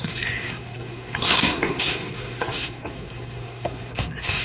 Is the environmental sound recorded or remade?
remade